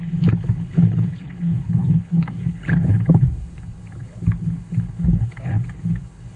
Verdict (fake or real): fake